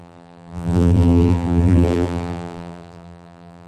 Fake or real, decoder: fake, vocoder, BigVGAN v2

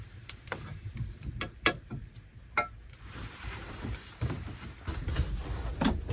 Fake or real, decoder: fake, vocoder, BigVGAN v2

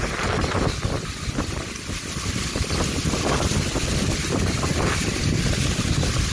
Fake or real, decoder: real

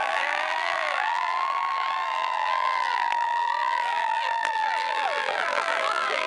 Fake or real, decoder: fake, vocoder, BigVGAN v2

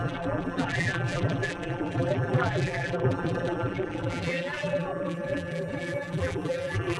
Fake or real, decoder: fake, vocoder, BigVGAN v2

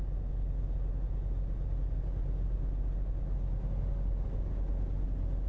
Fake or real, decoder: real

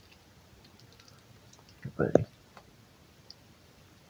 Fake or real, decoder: real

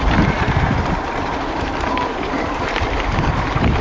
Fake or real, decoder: fake, vocoder, BigVGAN v2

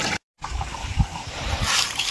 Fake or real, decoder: fake, vocoder, BigVGAN v2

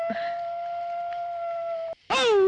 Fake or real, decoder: real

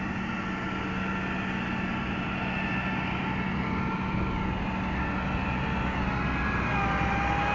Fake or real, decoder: real